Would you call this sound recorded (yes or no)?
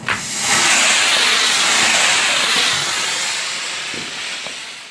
yes